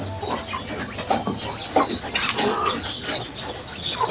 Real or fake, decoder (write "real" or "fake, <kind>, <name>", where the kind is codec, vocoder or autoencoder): real